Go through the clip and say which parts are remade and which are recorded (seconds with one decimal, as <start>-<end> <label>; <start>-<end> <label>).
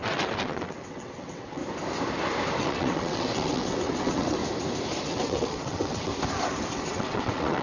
0.0-1.6 remade; 1.6-2.6 recorded; 2.6-4.4 remade; 4.4-5.1 recorded; 5.1-6.1 remade; 6.1-6.7 recorded; 6.7-7.6 remade